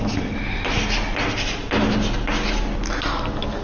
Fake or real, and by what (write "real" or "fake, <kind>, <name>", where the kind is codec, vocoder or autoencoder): real